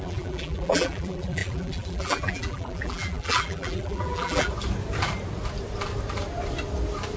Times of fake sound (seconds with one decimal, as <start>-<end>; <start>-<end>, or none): 0.0-4.5